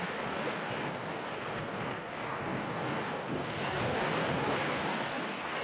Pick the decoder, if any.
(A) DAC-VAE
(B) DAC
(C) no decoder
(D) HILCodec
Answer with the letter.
B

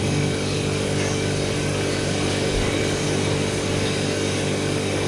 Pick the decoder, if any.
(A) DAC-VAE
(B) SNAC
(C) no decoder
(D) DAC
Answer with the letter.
D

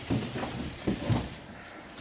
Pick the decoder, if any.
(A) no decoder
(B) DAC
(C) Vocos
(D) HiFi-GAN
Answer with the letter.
A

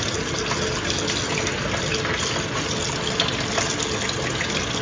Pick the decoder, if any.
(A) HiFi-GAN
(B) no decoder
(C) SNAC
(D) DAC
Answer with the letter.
B